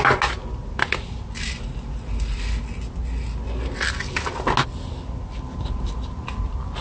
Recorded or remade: recorded